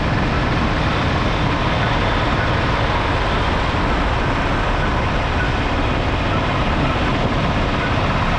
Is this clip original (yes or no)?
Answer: yes